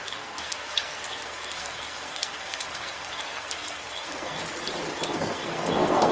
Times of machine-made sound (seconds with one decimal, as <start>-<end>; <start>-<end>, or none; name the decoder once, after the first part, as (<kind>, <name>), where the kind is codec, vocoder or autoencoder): 0.0-4.4 (codec, SNAC); 5.1-6.1